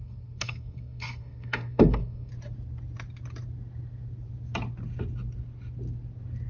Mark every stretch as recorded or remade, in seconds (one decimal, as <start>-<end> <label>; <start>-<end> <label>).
0.0-2.3 remade; 2.3-6.5 recorded